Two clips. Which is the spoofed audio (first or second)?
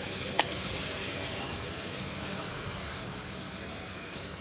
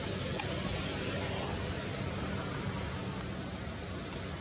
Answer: first